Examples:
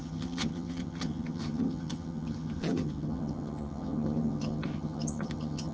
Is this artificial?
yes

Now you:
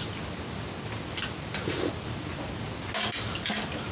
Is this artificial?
no